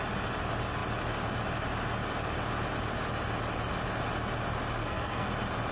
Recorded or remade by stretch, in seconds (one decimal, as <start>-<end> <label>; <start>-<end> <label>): 0.0-4.8 recorded; 4.8-5.3 remade; 5.3-5.7 recorded